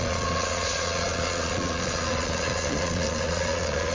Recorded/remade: remade